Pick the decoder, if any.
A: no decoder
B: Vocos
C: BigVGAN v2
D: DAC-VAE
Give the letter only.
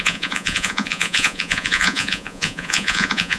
B